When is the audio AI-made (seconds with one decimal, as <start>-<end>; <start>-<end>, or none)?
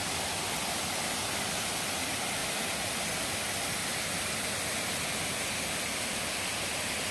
none